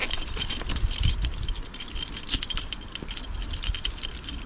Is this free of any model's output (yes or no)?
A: yes